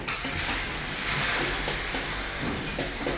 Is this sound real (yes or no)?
yes